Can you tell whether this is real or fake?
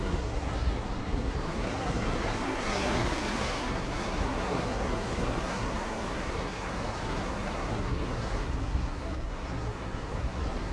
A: fake